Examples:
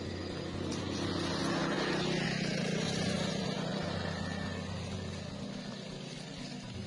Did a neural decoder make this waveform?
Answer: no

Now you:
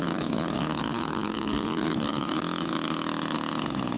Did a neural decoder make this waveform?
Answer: yes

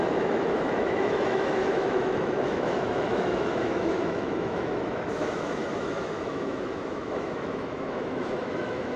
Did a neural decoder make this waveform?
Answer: yes